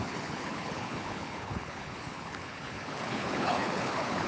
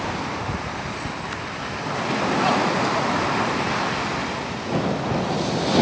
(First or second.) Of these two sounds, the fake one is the first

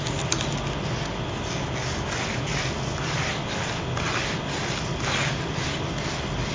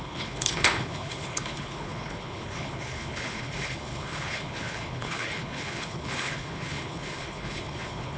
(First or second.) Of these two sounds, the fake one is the second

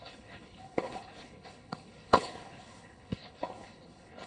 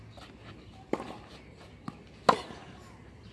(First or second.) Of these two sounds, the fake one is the first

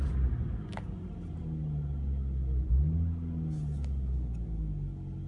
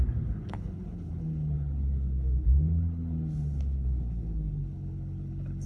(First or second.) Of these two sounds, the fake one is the second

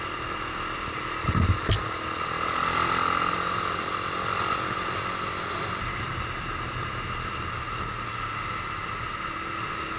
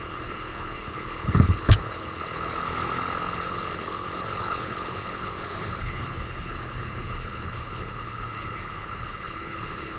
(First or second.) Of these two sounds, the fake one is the second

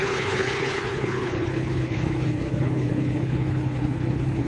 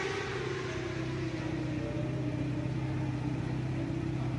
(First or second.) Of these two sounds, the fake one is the first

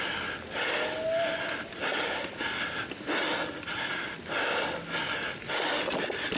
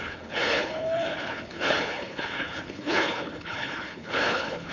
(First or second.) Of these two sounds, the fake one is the second